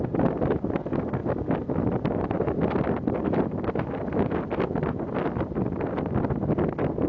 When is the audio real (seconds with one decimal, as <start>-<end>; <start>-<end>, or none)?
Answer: 0.0-7.1